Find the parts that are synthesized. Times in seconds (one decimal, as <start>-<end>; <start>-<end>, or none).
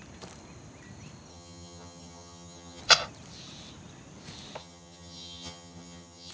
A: 1.3-2.8; 4.6-6.3